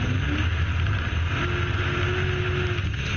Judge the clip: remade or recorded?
recorded